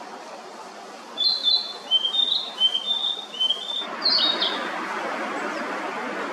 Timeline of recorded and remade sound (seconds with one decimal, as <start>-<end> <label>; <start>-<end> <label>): 0.0-6.3 recorded